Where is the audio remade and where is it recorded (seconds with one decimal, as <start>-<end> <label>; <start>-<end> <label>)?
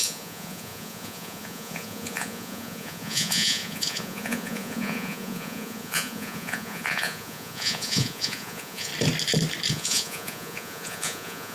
0.0-8.9 remade; 8.9-9.7 recorded; 9.7-11.5 remade